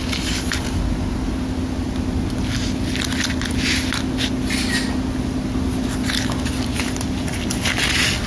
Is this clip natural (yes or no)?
yes